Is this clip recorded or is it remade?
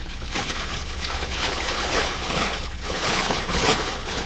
remade